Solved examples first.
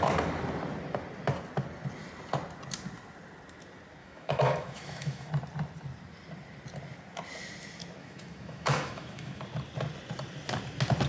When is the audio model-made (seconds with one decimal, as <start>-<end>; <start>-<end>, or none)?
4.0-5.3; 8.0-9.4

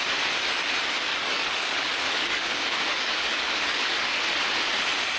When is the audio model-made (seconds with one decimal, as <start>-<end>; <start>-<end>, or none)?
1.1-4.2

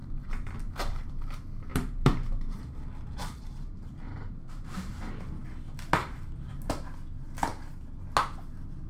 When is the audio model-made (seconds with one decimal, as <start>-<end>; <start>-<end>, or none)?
0.0-1.1; 1.7-5.1; 6.0-6.7

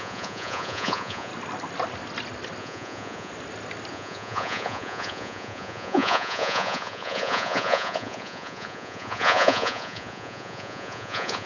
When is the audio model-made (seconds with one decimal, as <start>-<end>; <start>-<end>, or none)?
0.0-1.3; 2.6-3.3; 3.9-11.5

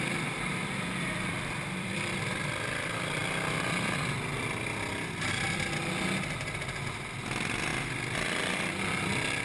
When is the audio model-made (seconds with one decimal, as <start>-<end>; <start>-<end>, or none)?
0.0-3.2; 6.9-7.7; 8.4-9.4

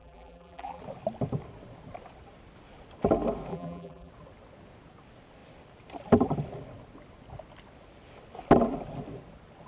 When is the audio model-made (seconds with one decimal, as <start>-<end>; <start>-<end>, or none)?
0.0-0.8; 3.5-4.1

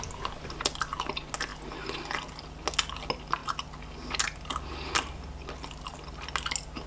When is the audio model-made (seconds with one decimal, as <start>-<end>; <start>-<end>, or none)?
none

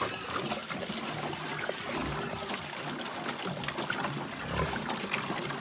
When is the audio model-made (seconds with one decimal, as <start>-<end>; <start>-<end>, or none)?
none